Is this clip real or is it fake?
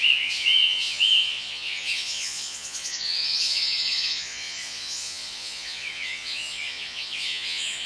fake